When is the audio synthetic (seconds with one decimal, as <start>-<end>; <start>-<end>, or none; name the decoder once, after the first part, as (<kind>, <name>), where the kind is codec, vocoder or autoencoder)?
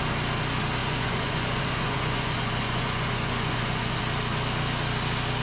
0.8-4.0 (vocoder, Vocos)